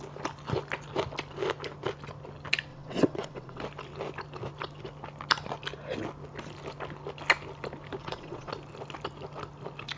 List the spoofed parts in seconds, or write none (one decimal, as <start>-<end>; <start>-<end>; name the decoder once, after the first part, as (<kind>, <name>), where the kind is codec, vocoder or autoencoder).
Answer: 2.7-3.6 (vocoder, WaveNeXt); 8.0-8.5

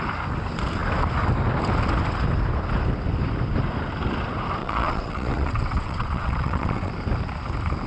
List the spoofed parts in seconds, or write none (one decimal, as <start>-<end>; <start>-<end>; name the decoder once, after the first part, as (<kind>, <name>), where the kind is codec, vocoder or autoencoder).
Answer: 4.6-6.9 (vocoder, WaveNeXt)

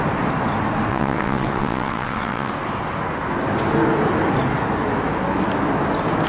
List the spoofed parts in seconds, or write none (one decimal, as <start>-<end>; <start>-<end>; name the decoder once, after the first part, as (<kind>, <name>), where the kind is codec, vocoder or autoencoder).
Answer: 0.9-2.5 (vocoder, WaveNeXt)

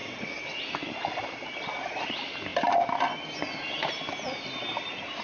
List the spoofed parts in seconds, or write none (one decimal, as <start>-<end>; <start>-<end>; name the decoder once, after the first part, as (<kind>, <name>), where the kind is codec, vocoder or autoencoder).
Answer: 0.0-0.6 (vocoder, WaveNeXt)